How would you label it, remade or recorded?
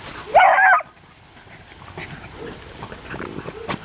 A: recorded